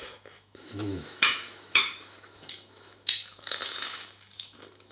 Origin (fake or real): fake